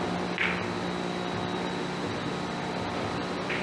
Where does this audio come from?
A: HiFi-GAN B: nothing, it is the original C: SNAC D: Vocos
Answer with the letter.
B